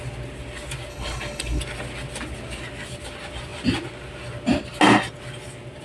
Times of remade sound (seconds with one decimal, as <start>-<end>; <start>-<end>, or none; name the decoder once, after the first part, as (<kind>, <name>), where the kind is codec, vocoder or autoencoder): 0.9-1.6 (codec, HILCodec)